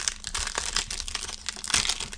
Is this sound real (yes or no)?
yes